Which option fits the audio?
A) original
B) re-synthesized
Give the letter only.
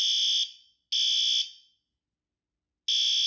A